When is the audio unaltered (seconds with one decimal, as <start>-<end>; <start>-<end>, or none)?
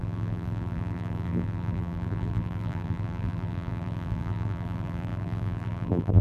none